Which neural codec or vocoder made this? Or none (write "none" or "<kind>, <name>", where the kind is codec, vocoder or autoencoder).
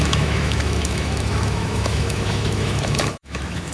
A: autoencoder, DAC-VAE